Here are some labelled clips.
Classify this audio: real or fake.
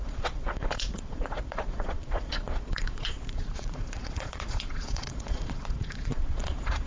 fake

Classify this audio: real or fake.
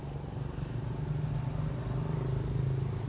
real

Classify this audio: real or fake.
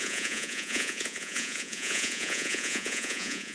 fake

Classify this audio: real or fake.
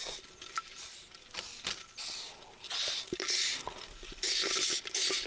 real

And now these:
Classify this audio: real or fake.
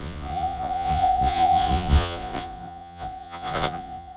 fake